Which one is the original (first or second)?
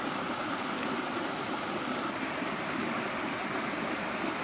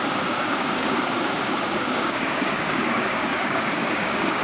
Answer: first